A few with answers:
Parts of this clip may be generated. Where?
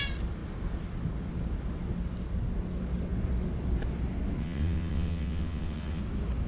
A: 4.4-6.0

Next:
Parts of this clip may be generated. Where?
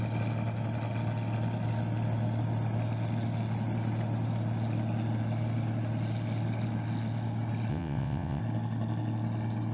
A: 7.7-8.4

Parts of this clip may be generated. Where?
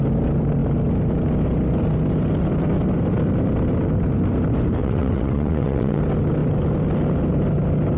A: 4.8-6.0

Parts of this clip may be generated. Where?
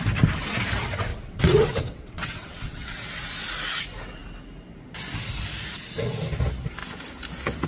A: 1.1-3.1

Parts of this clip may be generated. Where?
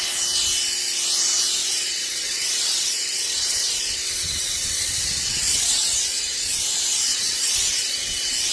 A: 1.6-6.6; 7.1-8.5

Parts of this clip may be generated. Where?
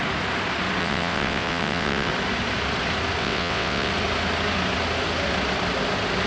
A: 0.8-2.1; 3.2-3.9